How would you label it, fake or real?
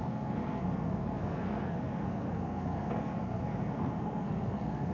fake